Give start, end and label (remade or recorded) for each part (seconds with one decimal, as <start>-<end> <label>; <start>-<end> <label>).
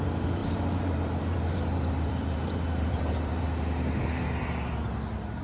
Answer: 0.0-0.4 recorded; 0.4-3.4 remade; 3.4-5.4 recorded